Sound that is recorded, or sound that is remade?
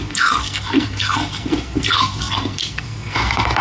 remade